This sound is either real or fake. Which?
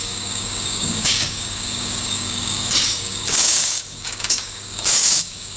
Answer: fake